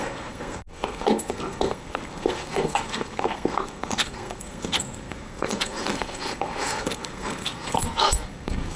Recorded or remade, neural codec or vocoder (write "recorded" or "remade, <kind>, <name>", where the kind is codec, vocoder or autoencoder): remade, codec, SNAC